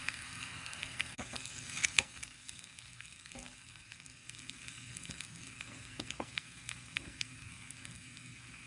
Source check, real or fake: fake